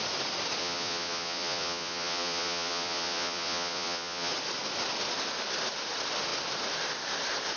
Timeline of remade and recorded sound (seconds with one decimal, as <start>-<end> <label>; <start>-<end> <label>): 0.0-0.6 recorded; 0.6-4.3 remade; 4.3-7.6 recorded